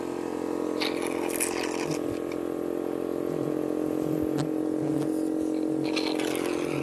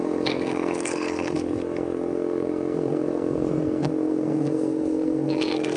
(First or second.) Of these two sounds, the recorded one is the first